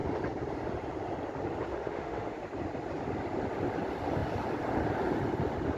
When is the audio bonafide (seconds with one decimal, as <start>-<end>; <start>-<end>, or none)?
0.0-1.7; 2.4-5.8